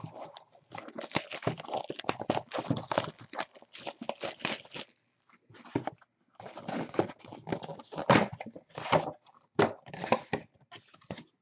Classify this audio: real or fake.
real